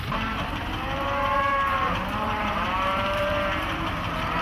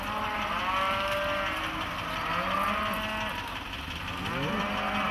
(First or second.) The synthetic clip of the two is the first